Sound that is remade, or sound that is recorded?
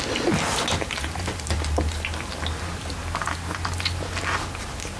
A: recorded